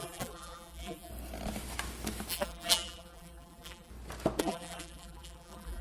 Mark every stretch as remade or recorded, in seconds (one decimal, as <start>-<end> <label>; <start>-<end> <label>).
0.0-1.1 remade; 1.1-2.3 recorded; 2.3-3.9 remade; 3.9-4.4 recorded; 4.4-5.8 remade